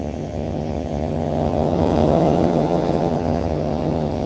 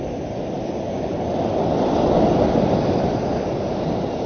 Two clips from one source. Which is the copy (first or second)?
first